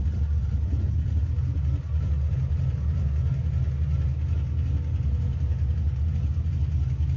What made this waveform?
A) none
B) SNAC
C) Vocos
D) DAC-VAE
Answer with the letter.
A